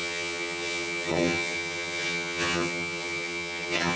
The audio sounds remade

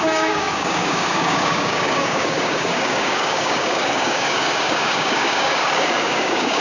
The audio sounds remade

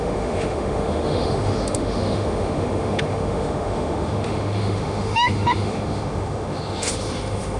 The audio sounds remade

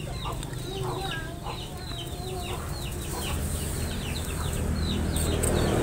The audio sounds recorded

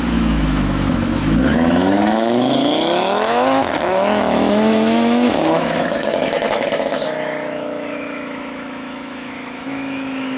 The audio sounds remade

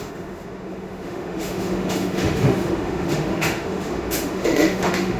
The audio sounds remade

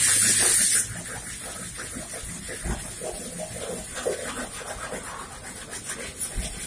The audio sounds recorded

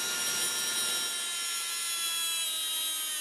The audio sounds recorded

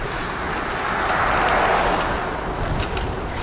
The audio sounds recorded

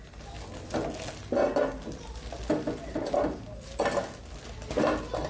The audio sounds recorded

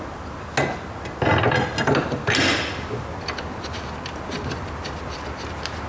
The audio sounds recorded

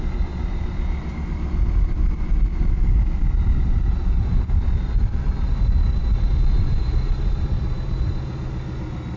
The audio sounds recorded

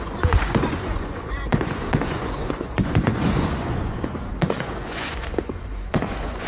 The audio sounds remade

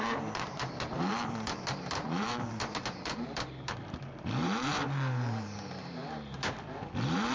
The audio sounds remade